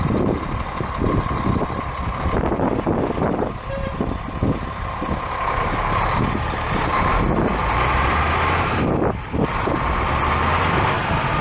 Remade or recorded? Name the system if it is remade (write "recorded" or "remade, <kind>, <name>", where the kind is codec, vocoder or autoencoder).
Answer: recorded